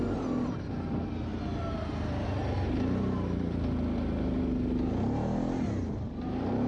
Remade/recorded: recorded